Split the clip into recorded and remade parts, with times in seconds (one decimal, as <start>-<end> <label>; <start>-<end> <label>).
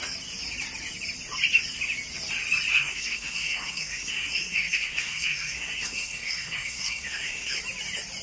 0.0-2.7 recorded; 2.7-7.6 remade; 7.6-8.2 recorded